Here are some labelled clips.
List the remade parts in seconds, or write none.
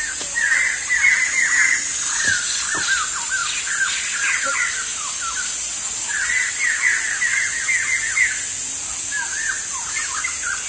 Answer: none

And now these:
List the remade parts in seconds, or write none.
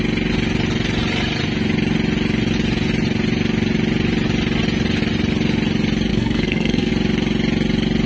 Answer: 6.1-6.9 (codec, SNAC)